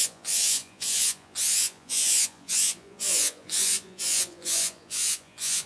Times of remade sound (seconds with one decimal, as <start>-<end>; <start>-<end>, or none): 0.0-5.7